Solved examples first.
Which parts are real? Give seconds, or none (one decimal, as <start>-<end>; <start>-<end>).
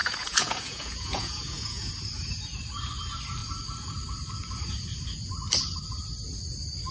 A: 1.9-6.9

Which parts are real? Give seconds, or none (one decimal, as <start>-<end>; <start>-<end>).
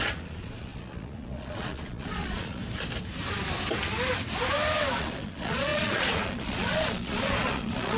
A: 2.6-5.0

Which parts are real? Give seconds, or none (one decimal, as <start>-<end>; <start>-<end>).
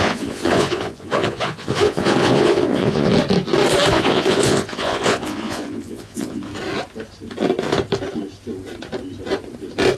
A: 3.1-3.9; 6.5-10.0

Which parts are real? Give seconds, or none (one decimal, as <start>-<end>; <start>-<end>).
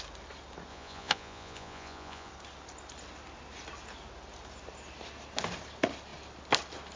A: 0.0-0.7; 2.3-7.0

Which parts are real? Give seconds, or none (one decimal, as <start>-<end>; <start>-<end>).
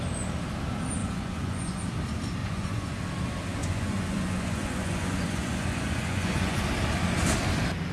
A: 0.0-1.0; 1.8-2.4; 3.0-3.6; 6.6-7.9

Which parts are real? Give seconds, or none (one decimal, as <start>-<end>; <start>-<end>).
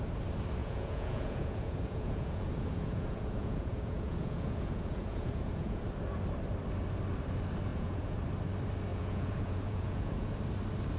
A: 0.0-0.6; 5.8-7.7; 8.2-8.9; 10.3-11.0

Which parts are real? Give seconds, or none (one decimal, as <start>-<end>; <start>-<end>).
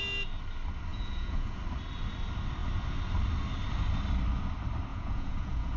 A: 0.0-0.9; 1.6-4.9